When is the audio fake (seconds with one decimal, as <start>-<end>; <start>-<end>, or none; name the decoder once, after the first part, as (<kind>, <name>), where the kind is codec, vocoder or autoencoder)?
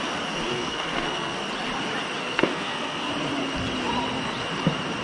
0.5-1.4 (codec, SNAC); 2.2-3.1